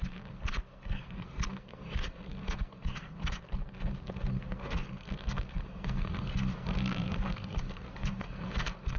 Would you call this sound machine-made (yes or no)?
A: yes